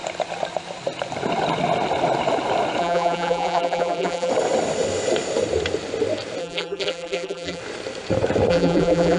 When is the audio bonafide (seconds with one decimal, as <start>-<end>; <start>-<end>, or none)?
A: 0.0-2.8; 4.3-6.4; 7.6-8.5